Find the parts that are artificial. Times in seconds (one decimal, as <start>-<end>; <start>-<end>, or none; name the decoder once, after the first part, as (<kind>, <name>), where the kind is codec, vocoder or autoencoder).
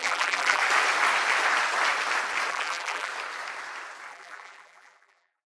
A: 0.0-0.6 (vocoder, BigVGAN v2); 2.5-3.1; 4.1-5.5